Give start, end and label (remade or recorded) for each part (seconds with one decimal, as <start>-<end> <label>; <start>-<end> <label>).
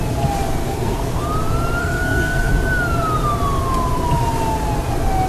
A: 0.0-0.6 recorded; 0.6-1.2 remade; 1.2-1.8 recorded; 1.8-2.5 remade; 2.5-5.3 recorded